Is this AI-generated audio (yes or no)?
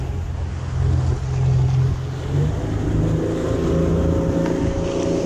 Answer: no